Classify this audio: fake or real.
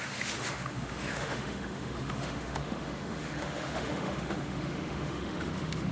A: fake